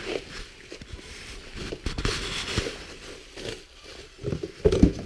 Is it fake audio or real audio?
real